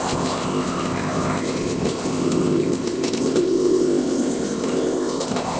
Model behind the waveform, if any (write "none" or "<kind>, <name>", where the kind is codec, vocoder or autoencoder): codec, ZipCodec